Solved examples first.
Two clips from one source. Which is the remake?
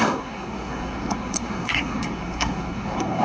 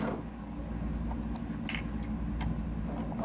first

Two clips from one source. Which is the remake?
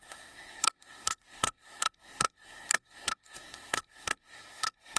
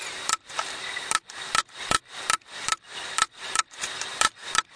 first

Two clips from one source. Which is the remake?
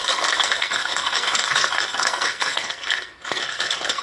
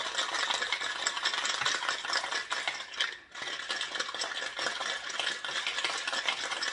first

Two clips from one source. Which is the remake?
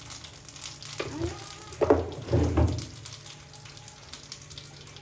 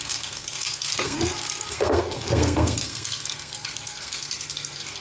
second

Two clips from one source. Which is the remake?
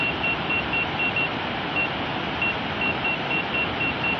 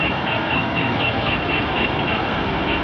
second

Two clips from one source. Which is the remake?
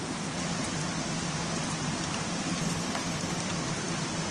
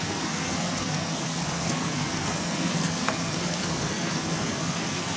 second